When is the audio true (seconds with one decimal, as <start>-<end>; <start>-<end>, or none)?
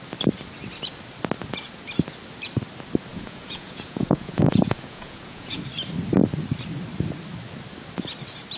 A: 0.0-3.1; 5.6-8.6